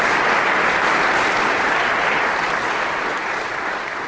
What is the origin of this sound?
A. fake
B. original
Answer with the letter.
B